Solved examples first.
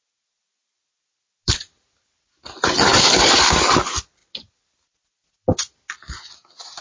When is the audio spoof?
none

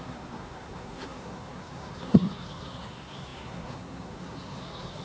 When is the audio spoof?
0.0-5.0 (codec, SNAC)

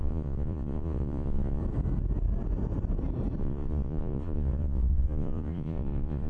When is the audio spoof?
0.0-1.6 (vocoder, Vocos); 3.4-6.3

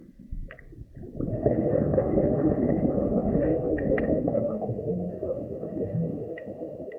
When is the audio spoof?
1.3-7.0 (autoencoder, DAC-VAE)